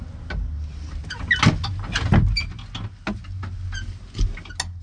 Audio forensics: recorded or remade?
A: recorded